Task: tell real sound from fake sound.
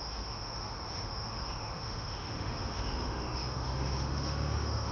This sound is fake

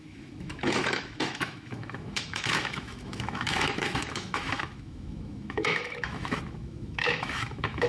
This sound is fake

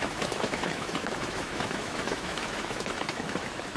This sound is fake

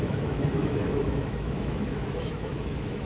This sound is fake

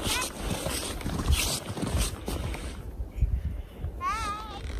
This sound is real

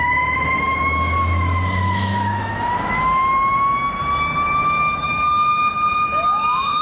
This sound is fake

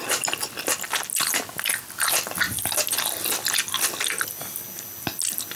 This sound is real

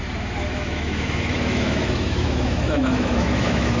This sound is fake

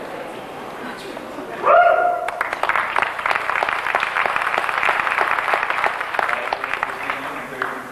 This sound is real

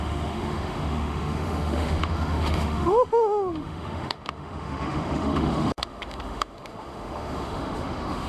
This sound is fake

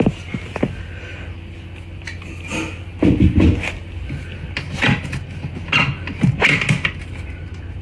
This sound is real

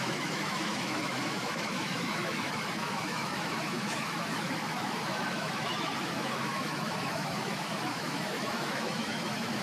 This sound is fake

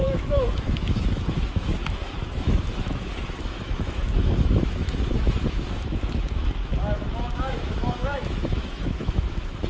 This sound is fake